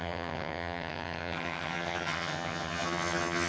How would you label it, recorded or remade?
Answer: remade